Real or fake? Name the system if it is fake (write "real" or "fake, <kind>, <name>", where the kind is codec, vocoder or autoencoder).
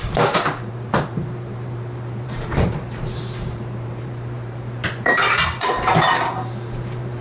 fake, vocoder, BigVGAN v2